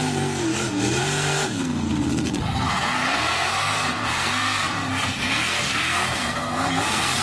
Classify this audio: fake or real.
fake